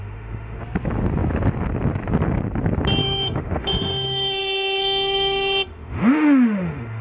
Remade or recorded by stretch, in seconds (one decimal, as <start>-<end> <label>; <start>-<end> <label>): 0.0-0.6 remade; 0.6-3.0 recorded; 3.0-7.0 remade